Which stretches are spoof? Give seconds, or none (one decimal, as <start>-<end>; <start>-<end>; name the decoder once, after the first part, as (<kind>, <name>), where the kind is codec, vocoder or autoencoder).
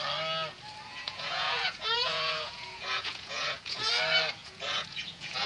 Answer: 0.9-3.9 (vocoder, Vocos); 4.4-5.5